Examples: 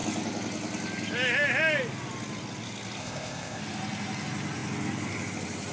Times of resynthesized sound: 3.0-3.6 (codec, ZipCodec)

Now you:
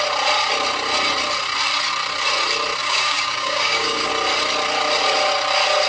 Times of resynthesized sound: 2.8-4.1 (codec, DAC)

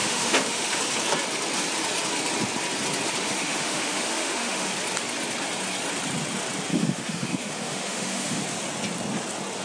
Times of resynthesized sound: 0.0-0.8 (autoencoder, DAC-VAE); 3.2-4.7; 6.7-8.4

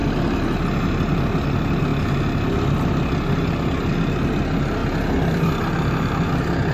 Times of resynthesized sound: none

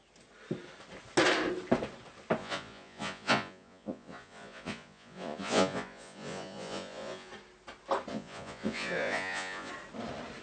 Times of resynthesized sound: 2.4-7.3 (vocoder, Vocos); 8.1-9.7

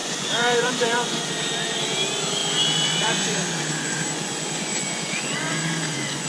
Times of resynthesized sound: 0.0-1.3 (vocoder, Vocos); 2.4-6.3